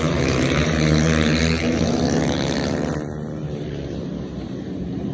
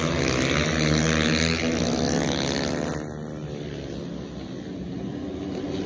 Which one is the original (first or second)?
second